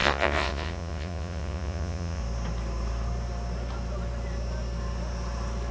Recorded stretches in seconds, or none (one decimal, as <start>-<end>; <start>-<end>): 2.2-5.7